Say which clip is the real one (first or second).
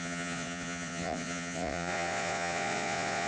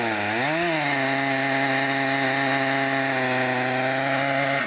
second